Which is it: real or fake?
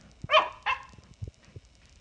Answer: real